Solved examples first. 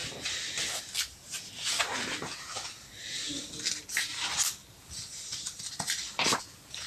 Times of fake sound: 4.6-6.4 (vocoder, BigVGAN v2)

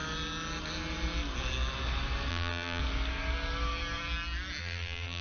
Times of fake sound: 2.3-2.8 (vocoder, BigVGAN v2); 4.6-5.2

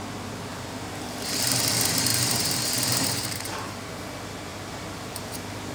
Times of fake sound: 0.5-1.6 (vocoder, BigVGAN v2); 2.1-4.0; 4.5-5.3

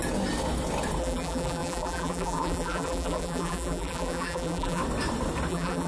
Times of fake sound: 1.0-4.8 (vocoder, BigVGAN v2); 5.5-5.9

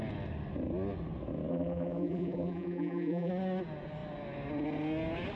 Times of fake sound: 1.5-3.3 (vocoder, BigVGAN v2)

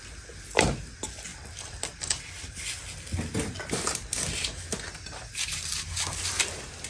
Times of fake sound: 1.3-2.1 (vocoder, BigVGAN v2)

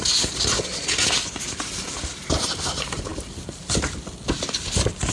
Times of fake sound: none